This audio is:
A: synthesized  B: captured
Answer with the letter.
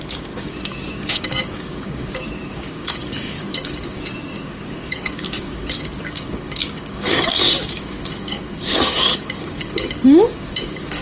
A